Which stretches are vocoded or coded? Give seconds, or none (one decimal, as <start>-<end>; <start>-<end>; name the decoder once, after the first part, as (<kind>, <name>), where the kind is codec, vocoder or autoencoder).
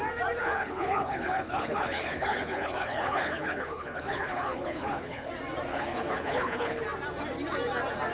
0.4-5.3 (codec, HILCodec); 5.7-6.8